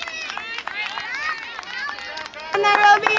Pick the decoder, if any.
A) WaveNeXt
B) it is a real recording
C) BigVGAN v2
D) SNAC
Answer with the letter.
B